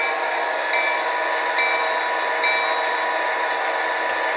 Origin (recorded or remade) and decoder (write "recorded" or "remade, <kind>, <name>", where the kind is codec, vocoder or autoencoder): recorded